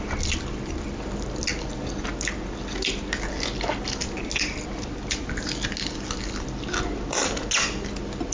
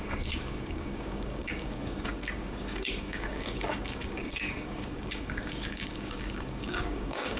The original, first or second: first